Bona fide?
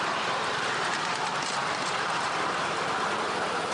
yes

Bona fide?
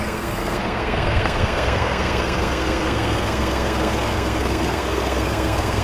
no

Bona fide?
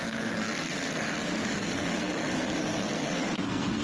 no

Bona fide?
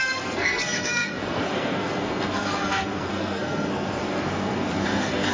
no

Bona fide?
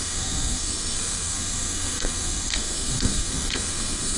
no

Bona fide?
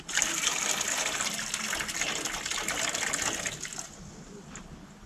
yes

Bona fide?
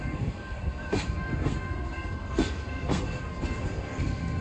no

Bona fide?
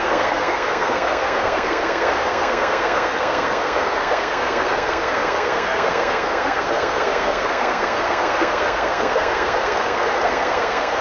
no